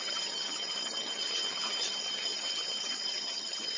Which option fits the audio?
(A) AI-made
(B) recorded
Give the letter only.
A